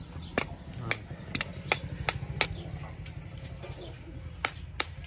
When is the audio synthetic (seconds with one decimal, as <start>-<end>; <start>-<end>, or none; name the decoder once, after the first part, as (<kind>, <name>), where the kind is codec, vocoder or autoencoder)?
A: none